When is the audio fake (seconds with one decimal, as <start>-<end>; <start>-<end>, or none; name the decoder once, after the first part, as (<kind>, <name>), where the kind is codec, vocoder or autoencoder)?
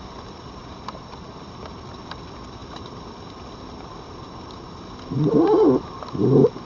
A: 0.6-1.4 (vocoder, BigVGAN v2)